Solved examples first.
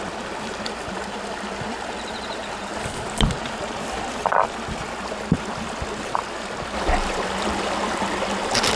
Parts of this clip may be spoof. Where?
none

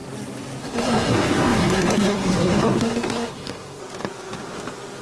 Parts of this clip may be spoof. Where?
0.6-3.8 (codec, SNAC)

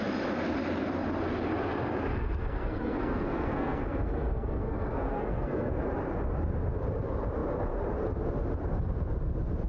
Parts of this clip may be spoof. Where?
2.1-5.7 (codec, SNAC)

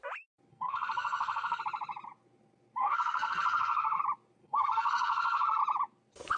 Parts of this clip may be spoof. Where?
0.5-1.6 (codec, SNAC); 2.8-4.0; 4.4-5.6

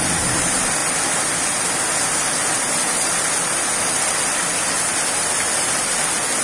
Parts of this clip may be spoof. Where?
none

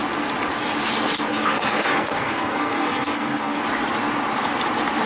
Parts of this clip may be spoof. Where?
1.3-3.6 (codec, SNAC)

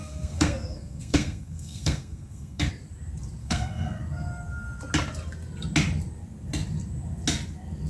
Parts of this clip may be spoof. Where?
0.0-2.7 (codec, SNAC); 3.4-4.0

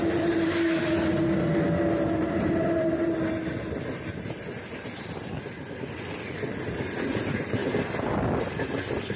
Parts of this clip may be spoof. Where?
none